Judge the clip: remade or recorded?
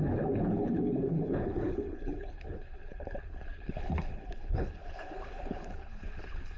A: remade